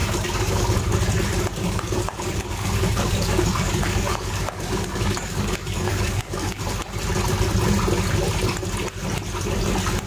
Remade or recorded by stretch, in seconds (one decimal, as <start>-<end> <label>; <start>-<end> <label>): 0.0-0.8 remade; 0.8-1.6 recorded; 1.6-6.6 remade; 6.6-10.1 recorded